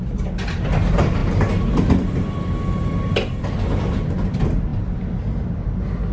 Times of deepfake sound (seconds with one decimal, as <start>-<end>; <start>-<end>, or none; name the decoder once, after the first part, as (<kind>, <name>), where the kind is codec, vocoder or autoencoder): none